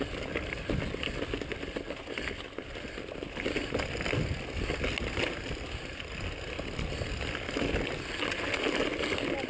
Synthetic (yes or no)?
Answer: no